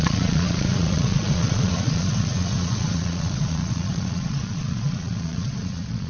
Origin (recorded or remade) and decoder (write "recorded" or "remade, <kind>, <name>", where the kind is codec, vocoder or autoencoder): remade, vocoder, Vocos